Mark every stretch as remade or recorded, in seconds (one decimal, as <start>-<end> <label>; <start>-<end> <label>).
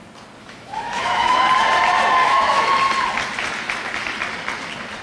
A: 0.0-0.4 recorded; 0.4-1.4 remade; 1.4-2.2 recorded; 2.2-2.7 remade; 2.7-5.0 recorded